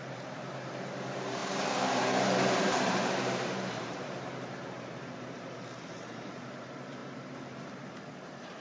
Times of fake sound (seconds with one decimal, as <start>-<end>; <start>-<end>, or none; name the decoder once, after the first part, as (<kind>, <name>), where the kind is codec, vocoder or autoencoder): 0.0-8.6 (vocoder, BigVGAN v2)